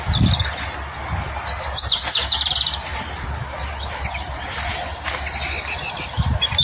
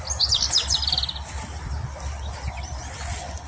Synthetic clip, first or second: second